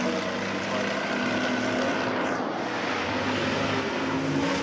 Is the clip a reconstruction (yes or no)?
no